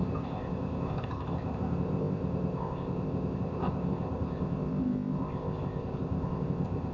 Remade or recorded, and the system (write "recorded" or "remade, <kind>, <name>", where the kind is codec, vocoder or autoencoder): remade, codec, ZipCodec